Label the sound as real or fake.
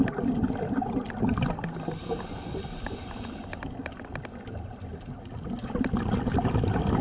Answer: real